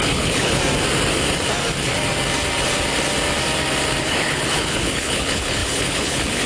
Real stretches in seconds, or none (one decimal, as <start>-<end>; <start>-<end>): 0.6-4.0